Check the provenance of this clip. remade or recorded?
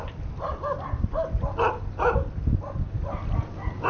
recorded